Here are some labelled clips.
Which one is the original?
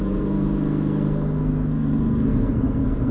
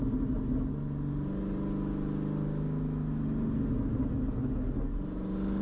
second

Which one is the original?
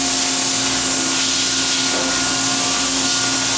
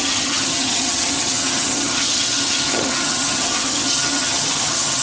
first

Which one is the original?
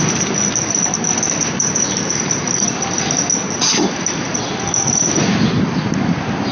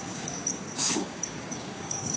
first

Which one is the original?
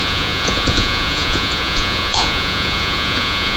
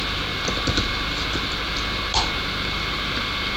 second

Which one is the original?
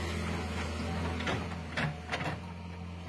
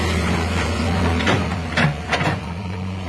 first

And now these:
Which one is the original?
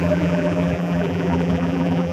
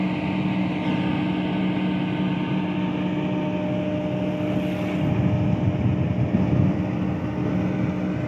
second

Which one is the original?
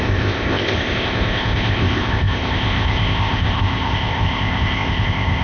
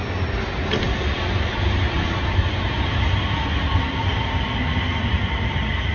second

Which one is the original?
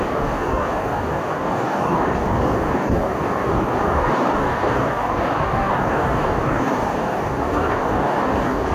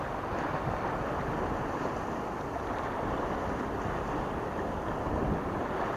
second